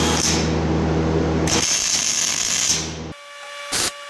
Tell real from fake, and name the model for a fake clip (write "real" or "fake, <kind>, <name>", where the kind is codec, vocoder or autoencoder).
real